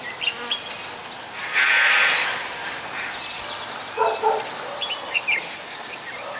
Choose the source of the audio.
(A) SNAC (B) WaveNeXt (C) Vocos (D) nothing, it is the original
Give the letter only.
D